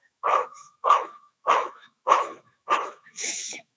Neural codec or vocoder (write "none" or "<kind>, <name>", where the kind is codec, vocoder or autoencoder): autoencoder, DAC-VAE